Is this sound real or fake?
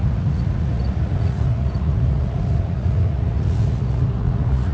fake